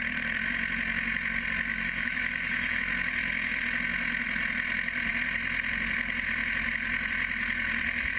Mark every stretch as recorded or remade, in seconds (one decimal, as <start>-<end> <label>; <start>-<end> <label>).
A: 0.0-1.7 recorded; 1.7-2.8 remade; 2.8-8.2 recorded